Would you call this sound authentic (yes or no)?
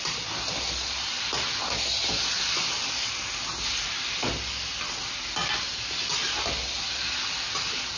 yes